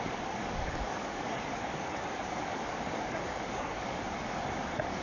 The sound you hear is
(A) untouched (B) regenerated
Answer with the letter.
B